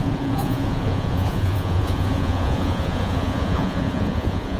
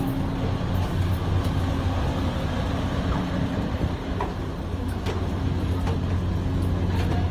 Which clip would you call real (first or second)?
second